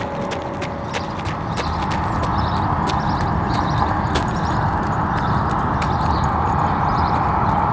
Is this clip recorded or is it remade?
recorded